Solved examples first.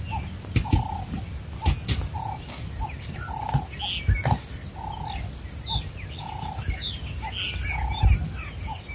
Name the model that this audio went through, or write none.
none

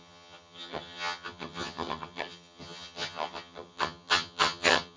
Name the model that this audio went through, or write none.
vocoder, HiFi-GAN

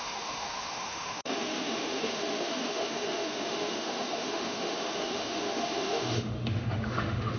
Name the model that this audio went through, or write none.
autoencoder, DAC-VAE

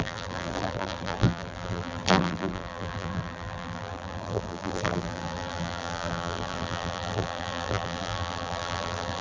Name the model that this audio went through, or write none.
vocoder, BigVGAN v2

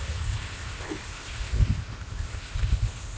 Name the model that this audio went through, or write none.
codec, ZipCodec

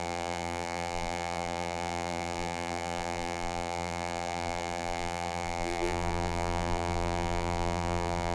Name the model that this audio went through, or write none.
vocoder, BigVGAN v2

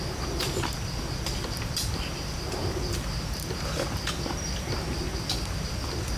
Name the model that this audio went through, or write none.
none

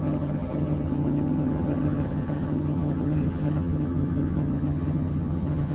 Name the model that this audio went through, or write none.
vocoder, HiFi-GAN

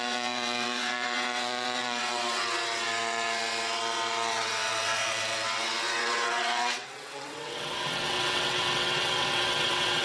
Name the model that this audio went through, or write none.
vocoder, WaveNeXt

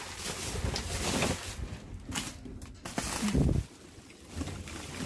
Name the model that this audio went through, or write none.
none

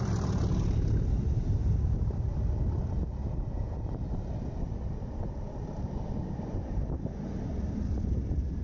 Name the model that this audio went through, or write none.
vocoder, BigVGAN v2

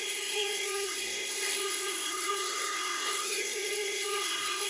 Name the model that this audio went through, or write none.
codec, SNAC